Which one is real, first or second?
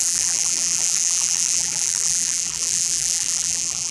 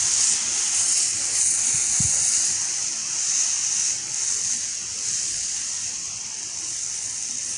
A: second